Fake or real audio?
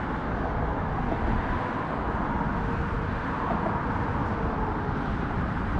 real